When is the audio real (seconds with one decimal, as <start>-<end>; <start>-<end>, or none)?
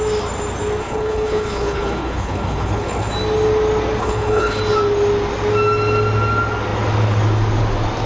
0.0-0.8; 3.1-4.0; 4.6-8.1